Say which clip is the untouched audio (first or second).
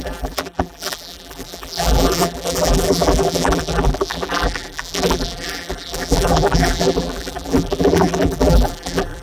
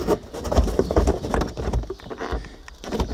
second